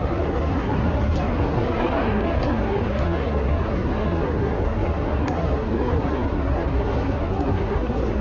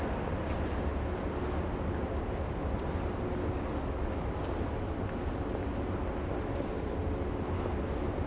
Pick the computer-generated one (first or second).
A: first